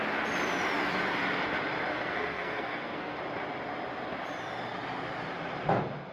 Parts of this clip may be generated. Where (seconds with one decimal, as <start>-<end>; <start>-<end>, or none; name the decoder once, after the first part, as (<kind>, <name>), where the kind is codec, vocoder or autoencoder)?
1.9-3.2 (codec, SNAC)